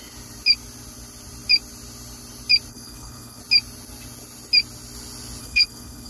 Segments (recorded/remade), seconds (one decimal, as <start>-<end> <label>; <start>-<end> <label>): 0.0-2.7 recorded; 2.7-3.4 remade; 3.4-5.4 recorded; 5.4-6.1 remade